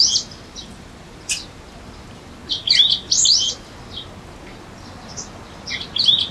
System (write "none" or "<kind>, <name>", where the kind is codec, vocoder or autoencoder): none